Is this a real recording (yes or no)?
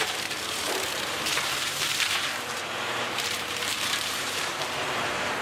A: no